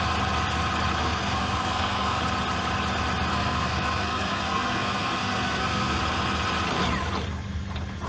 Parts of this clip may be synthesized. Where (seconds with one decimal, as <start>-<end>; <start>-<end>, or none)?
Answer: 1.0-2.2; 3.3-6.0